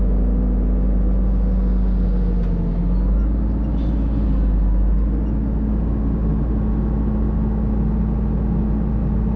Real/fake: real